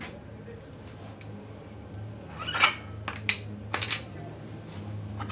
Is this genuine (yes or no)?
yes